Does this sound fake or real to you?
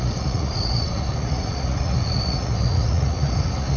fake